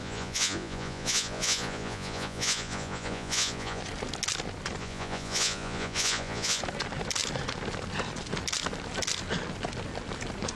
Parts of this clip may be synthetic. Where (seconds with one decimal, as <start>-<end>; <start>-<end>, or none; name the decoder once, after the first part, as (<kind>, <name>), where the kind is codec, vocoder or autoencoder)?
0.0-3.8 (vocoder, Vocos); 4.8-6.6